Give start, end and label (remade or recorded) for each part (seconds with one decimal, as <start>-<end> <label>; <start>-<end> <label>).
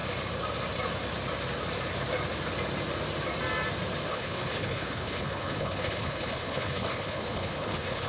0.0-4.1 recorded; 4.1-8.1 remade